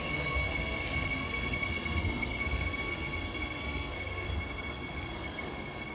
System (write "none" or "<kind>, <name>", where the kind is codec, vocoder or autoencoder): codec, SNAC